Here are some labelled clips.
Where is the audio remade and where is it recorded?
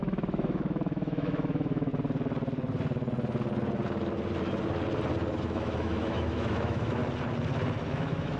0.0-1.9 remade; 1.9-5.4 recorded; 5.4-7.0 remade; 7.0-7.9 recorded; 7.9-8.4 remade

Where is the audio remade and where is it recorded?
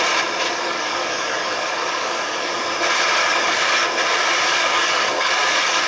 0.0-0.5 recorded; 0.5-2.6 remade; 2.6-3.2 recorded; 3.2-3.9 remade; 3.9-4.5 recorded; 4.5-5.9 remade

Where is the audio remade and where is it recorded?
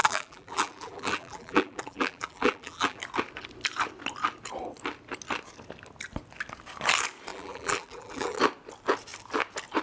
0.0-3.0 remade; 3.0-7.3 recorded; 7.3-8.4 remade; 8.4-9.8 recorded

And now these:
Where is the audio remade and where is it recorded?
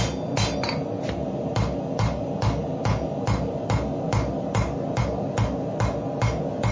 0.0-6.7 recorded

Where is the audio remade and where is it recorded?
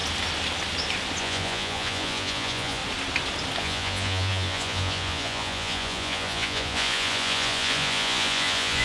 0.0-1.2 recorded; 1.2-2.8 remade; 2.8-3.6 recorded; 3.6-8.8 remade